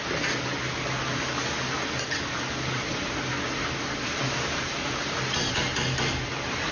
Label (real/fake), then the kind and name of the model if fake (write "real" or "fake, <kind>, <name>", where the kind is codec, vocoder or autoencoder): real